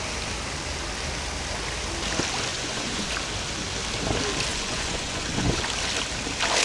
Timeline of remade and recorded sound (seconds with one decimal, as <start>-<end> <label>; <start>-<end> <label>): 0.0-2.5 recorded; 2.5-3.1 remade; 3.1-4.5 recorded; 4.5-5.6 remade; 5.6-6.6 recorded